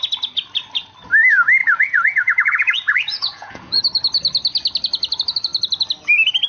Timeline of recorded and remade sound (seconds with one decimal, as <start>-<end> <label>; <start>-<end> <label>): 0.0-1.6 recorded; 1.6-3.8 remade; 3.8-6.5 recorded